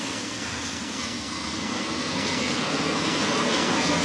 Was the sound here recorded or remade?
remade